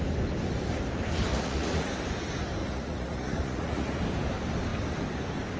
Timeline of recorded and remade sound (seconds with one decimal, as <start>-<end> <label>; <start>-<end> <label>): 0.0-1.3 recorded; 1.3-1.9 remade; 1.9-2.6 recorded; 2.6-4.0 remade; 4.0-5.6 recorded